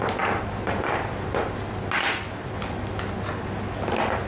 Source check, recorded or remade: recorded